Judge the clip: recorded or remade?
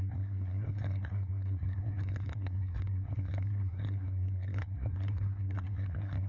remade